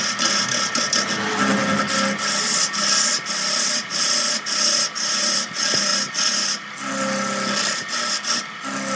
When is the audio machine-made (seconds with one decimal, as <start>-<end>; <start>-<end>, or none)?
none